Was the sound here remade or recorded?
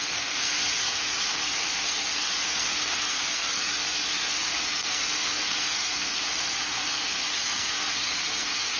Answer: remade